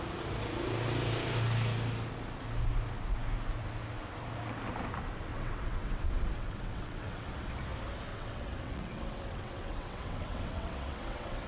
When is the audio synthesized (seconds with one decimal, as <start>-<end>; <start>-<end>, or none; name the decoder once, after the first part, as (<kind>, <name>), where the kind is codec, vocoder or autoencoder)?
5.3-7.3 (vocoder, WaveNeXt); 8.1-11.5